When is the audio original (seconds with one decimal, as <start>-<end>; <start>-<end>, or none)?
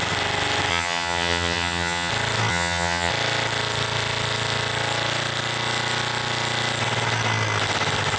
0.0-0.7; 2.1-2.5; 3.1-8.2